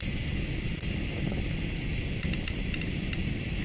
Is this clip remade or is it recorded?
recorded